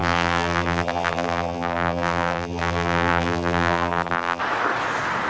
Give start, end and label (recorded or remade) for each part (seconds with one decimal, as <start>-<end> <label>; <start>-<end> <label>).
0.0-4.4 remade; 4.4-5.3 recorded